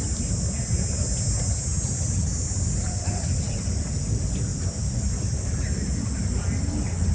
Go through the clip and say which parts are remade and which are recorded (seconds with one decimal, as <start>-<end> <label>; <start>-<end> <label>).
0.0-7.1 recorded